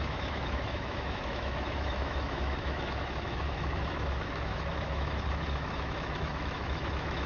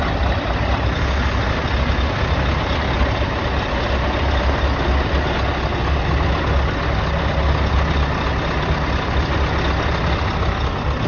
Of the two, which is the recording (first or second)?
second